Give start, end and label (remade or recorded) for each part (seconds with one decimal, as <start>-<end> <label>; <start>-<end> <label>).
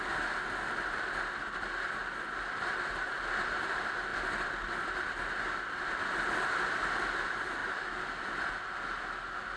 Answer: 0.0-9.6 recorded